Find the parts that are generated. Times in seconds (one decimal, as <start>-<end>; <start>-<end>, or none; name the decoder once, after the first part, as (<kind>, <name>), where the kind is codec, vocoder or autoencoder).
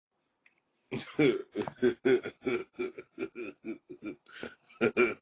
2.6-3.3 (vocoder, Vocos)